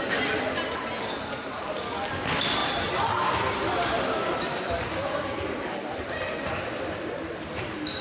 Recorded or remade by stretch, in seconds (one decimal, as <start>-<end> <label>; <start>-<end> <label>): 0.0-8.0 recorded